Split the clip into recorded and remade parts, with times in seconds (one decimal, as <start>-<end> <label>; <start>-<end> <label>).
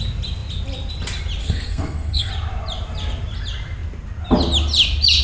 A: 0.0-1.4 recorded; 1.4-2.3 remade; 2.3-5.2 recorded